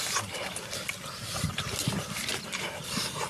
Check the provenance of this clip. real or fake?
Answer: fake